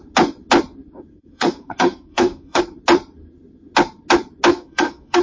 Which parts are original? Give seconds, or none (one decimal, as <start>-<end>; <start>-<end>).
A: 0.0-1.1; 2.6-4.5